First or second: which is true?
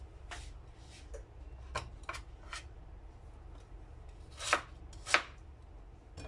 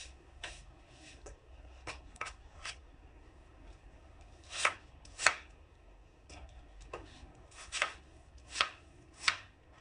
first